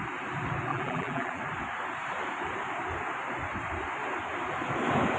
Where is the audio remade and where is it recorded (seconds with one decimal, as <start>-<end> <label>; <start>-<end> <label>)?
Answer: 0.0-0.7 recorded; 0.7-1.4 remade; 1.4-5.2 recorded